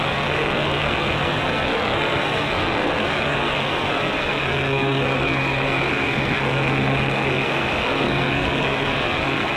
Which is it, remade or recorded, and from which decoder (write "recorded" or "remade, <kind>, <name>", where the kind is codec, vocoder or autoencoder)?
remade, codec, SNAC